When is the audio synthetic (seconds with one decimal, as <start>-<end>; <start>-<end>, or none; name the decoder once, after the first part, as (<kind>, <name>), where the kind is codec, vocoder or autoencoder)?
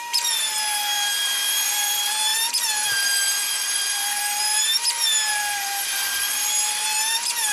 0.0-7.5 (vocoder, BigVGAN v2)